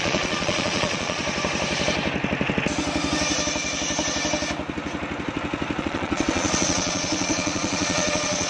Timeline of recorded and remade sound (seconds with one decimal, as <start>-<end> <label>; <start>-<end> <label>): 0.0-1.2 remade; 1.2-5.8 recorded; 5.8-8.5 remade

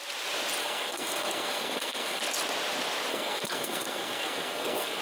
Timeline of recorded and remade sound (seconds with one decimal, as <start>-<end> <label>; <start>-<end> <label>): 0.0-0.6 recorded; 0.6-2.2 remade; 2.2-3.1 recorded; 3.1-5.0 remade

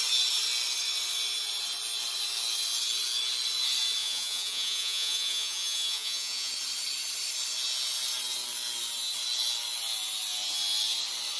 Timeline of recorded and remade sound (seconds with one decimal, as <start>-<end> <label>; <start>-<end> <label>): 0.0-4.0 recorded; 4.0-6.5 remade; 6.5-11.4 recorded

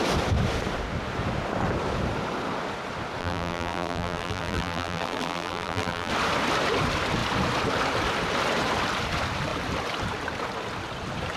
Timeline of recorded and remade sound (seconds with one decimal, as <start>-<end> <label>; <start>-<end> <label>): 0.0-3.2 recorded; 3.2-6.1 remade; 6.1-11.4 recorded

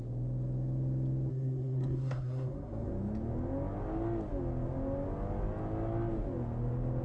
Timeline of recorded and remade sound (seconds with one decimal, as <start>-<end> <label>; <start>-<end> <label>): 0.0-1.3 recorded; 1.3-2.9 remade; 2.9-7.0 recorded

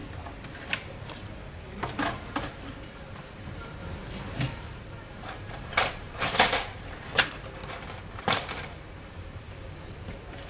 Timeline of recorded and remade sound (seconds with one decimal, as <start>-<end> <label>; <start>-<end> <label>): 0.0-0.6 recorded; 0.6-3.8 remade; 3.8-4.4 recorded; 4.4-7.6 remade; 7.6-8.2 recorded; 8.2-10.5 remade

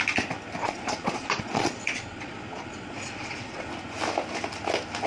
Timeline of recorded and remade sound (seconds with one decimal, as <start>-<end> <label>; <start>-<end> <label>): 0.0-0.6 recorded; 0.6-3.7 remade; 3.7-5.1 recorded

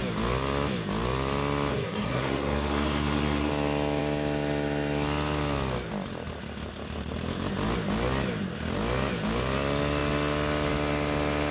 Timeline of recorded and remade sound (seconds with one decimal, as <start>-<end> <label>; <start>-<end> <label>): 0.0-1.7 recorded; 1.7-3.5 remade; 3.5-11.5 recorded